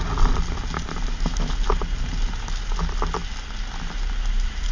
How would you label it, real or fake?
real